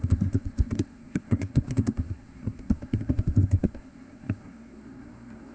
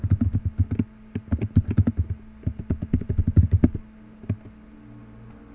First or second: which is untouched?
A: second